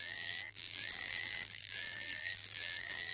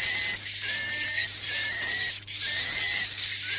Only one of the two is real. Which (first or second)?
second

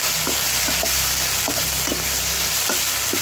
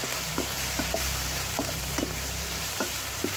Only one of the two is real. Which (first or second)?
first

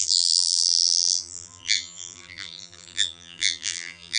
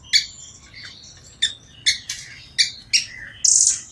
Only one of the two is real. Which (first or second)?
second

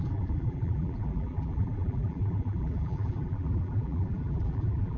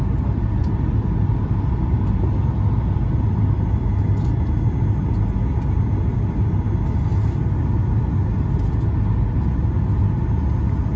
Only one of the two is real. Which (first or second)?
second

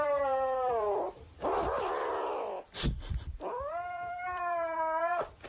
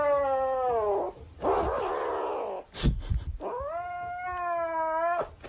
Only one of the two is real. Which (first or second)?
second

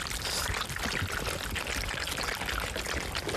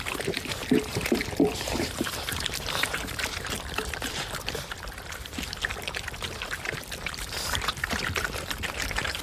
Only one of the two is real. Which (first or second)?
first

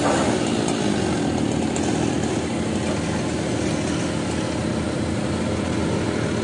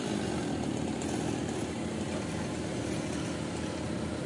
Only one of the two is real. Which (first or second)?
first